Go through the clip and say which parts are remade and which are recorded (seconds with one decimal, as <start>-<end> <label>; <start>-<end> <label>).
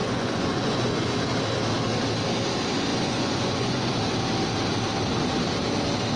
0.0-1.1 remade; 1.1-2.9 recorded; 2.9-3.9 remade; 3.9-6.2 recorded